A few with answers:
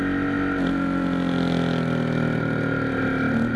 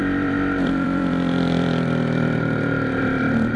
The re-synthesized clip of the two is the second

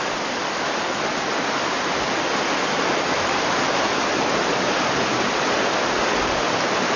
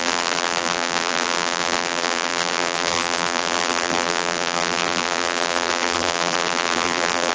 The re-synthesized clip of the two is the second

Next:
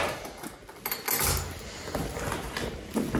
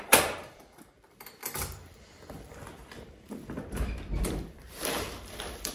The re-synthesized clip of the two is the second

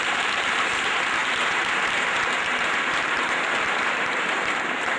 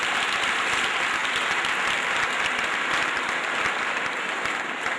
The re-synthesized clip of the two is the first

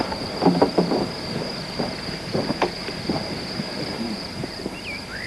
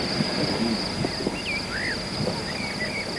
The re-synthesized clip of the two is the first